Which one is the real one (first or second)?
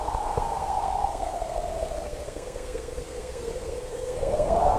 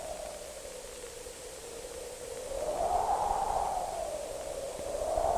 second